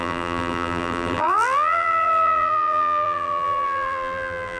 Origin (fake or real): fake